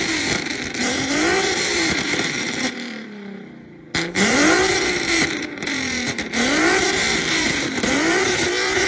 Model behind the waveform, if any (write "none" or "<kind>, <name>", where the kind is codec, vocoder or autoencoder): vocoder, BigVGAN v2